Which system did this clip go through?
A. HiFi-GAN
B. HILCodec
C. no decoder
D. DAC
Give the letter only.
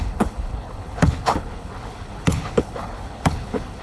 B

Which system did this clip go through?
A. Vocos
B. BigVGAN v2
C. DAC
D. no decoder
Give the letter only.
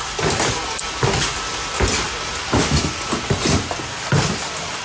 D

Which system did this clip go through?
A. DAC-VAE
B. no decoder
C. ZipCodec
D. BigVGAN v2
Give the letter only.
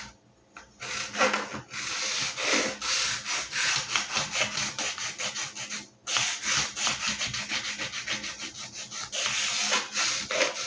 B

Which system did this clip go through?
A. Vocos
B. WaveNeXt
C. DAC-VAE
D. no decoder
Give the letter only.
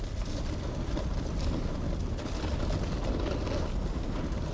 D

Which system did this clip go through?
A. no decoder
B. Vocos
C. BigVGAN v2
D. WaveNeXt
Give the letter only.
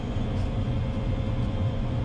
B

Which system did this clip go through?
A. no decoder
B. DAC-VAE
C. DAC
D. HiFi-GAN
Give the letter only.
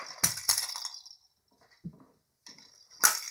A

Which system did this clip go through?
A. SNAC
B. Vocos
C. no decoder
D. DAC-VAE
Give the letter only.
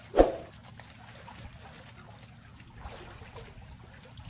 C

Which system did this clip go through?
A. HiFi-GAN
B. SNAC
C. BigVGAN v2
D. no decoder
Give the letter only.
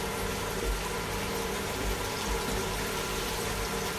C